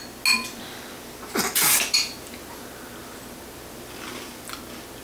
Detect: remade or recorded recorded